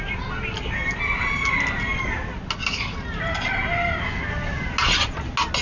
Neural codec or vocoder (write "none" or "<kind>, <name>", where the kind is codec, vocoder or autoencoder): none